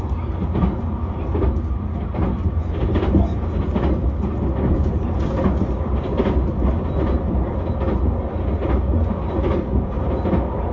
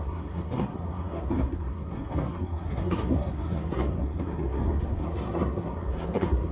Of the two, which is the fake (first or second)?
second